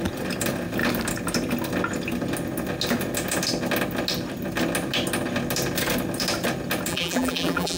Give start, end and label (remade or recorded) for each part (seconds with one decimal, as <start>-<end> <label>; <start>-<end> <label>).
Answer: 0.0-6.9 recorded; 6.9-7.8 remade